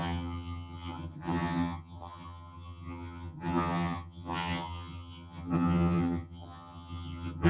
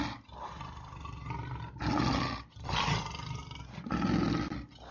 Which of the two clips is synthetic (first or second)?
first